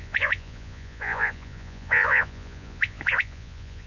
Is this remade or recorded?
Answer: remade